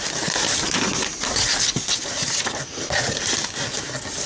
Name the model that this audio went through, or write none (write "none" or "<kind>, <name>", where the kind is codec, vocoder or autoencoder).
none